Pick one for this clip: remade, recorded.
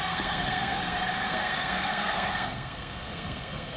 remade